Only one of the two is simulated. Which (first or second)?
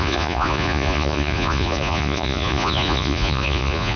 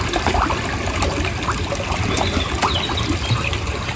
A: first